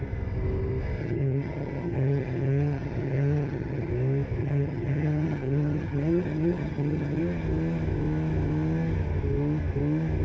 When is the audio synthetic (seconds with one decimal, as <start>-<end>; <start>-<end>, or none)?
1.0-3.9; 4.4-7.2